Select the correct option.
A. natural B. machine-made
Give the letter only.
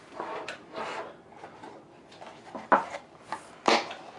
A